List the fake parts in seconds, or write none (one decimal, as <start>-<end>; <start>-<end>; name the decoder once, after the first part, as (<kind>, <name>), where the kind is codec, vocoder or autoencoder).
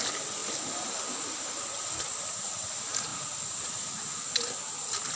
none